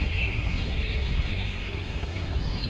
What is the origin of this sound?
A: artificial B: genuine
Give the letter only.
A